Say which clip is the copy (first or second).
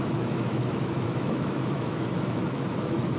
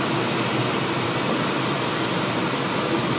first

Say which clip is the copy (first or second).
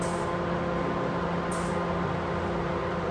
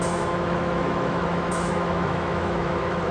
second